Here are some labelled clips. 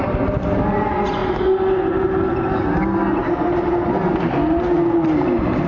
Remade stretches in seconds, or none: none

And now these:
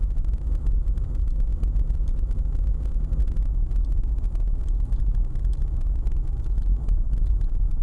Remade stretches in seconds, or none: none

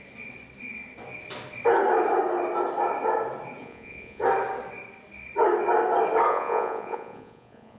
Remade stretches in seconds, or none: 3.6-4.2 (vocoder, Vocos); 6.3-7.8

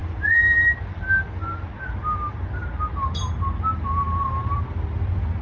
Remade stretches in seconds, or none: none